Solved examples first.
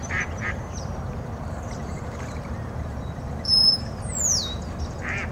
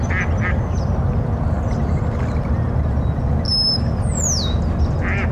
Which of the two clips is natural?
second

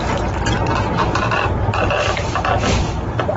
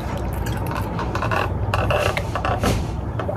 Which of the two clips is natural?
first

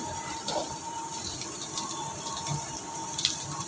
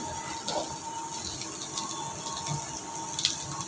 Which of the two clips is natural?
second